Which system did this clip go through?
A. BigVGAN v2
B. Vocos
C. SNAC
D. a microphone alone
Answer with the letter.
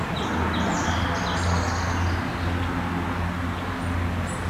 D